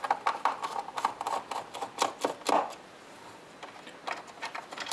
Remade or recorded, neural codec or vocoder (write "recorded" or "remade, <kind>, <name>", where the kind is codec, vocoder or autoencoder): recorded